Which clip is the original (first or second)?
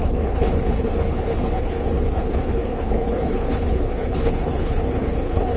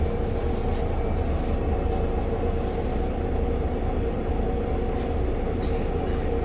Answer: second